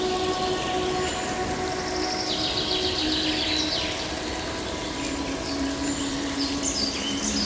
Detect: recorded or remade recorded